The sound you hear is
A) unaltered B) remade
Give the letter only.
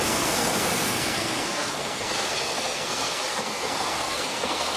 B